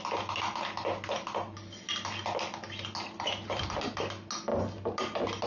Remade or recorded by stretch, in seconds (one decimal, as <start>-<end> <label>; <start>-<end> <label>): 0.0-5.5 recorded

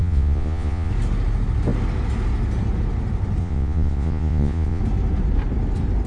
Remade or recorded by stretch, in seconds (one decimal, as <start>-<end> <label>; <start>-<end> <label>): 0.0-0.9 remade; 0.9-3.4 recorded; 3.4-4.8 remade; 4.8-6.1 recorded

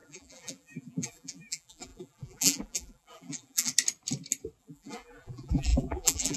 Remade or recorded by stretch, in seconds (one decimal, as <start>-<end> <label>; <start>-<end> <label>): 0.0-3.7 remade; 3.7-4.6 recorded; 4.6-6.4 remade

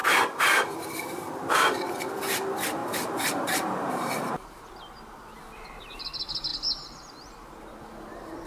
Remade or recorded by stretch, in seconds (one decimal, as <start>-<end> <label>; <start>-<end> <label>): 0.0-2.8 recorded; 2.8-4.1 remade; 4.1-8.5 recorded

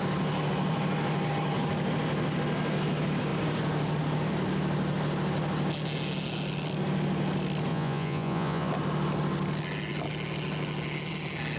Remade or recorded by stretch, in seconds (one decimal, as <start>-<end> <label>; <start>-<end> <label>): 0.0-7.7 recorded; 7.7-8.7 remade; 8.7-11.6 recorded

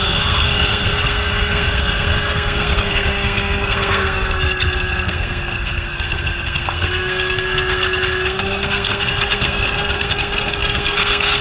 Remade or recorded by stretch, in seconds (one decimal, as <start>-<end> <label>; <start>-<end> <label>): 0.0-11.4 remade